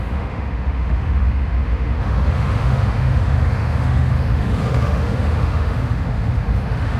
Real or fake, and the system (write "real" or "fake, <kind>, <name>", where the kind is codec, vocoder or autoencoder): fake, autoencoder, DAC-VAE